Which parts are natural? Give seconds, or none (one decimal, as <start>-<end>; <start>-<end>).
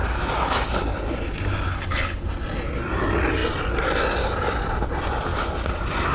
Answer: 0.0-1.7; 2.2-6.1